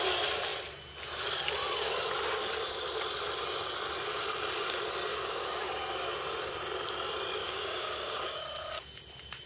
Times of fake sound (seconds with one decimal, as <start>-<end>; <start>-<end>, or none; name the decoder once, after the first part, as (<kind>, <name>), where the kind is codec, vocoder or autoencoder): 5.1-5.7 (codec, DAC); 7.4-8.4